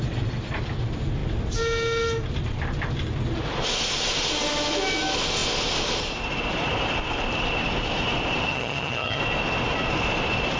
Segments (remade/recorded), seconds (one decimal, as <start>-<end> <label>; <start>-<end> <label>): 0.0-8.5 recorded; 8.5-9.2 remade; 9.2-10.6 recorded